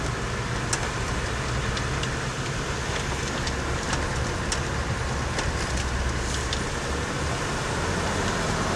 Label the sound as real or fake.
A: real